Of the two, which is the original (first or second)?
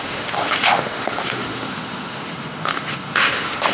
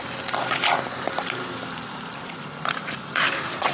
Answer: second